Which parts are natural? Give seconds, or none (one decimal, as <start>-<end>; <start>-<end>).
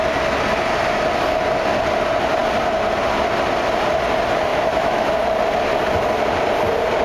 0.0-4.5; 5.1-7.0